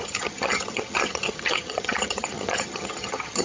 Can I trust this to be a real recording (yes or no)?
no